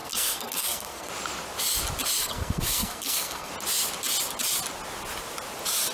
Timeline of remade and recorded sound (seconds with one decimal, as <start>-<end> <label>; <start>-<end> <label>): 0.0-1.1 remade; 1.1-2.2 recorded; 2.2-3.5 remade; 3.5-5.9 recorded